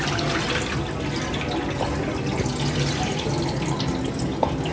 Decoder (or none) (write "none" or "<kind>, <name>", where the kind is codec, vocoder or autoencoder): none